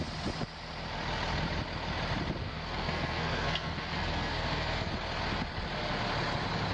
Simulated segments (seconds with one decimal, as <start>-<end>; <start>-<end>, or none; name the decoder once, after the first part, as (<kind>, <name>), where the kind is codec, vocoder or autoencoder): 2.4-4.9 (codec, SNAC)